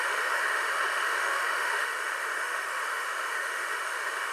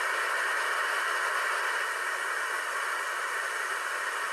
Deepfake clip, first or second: first